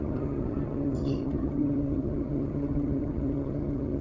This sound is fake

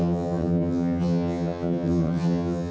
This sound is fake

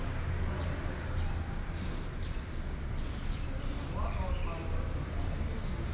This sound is real